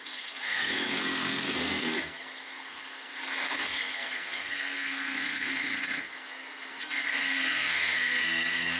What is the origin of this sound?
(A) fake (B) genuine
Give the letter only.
A